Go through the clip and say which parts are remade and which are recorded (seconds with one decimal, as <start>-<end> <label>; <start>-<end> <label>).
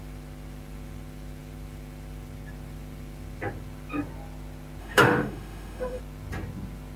0.0-4.8 recorded; 4.8-6.0 remade; 6.0-7.0 recorded